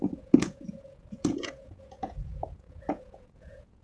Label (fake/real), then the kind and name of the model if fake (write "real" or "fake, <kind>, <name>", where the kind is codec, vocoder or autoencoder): fake, vocoder, Vocos